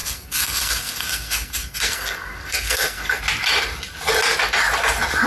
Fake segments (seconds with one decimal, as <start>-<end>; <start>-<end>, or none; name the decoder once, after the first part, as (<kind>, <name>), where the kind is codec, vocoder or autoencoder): 0.0-3.2 (codec, SNAC)